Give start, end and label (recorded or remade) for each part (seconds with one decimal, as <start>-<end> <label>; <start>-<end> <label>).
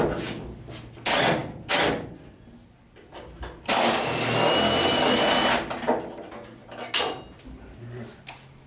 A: 0.0-8.7 recorded